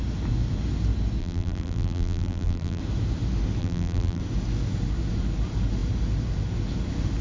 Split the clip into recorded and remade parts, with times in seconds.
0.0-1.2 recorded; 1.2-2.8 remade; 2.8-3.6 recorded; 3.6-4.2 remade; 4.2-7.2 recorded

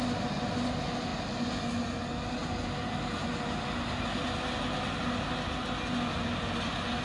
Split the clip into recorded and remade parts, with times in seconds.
0.0-7.0 recorded

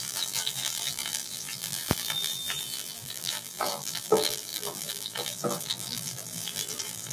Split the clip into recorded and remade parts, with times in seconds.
0.0-7.1 remade

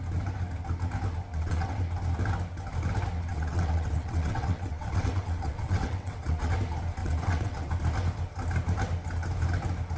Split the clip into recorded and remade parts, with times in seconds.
0.0-1.3 recorded; 1.3-1.8 remade; 1.8-3.3 recorded; 3.3-6.5 remade; 6.5-7.0 recorded; 7.0-7.7 remade; 7.7-10.0 recorded

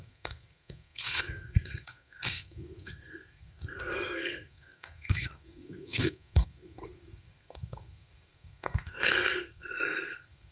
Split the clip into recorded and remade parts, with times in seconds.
0.0-10.5 remade

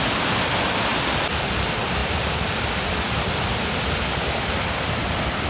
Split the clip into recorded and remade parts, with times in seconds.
0.0-5.5 recorded

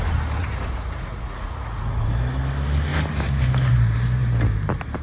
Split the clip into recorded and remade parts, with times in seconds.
0.0-0.4 recorded; 0.4-2.1 remade; 2.1-5.0 recorded

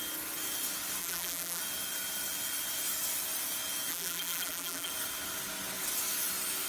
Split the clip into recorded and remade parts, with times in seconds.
0.0-1.0 recorded; 1.0-1.6 remade; 1.6-3.9 recorded; 3.9-4.9 remade; 4.9-6.7 recorded